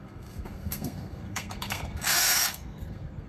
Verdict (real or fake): fake